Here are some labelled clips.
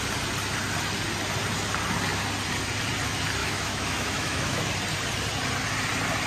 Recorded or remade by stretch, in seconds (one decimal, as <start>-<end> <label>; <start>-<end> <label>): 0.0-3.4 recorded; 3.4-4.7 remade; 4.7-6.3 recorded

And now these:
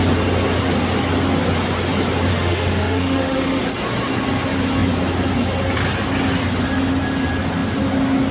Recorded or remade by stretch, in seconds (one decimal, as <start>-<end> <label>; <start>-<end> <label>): 0.0-2.3 recorded; 2.3-3.6 remade; 3.6-8.3 recorded

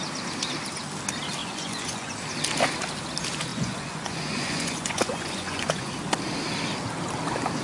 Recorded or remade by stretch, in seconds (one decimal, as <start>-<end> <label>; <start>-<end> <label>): 0.0-1.4 recorded; 1.4-2.1 remade; 2.1-3.5 recorded; 3.5-5.9 remade; 5.9-7.6 recorded